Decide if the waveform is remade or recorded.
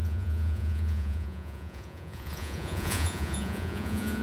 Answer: remade